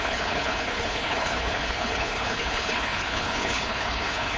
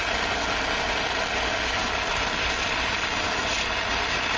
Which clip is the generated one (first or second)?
first